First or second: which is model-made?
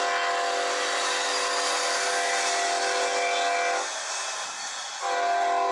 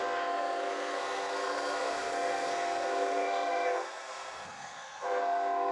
second